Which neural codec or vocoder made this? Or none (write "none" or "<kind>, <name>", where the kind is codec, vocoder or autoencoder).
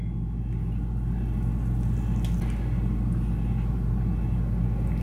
none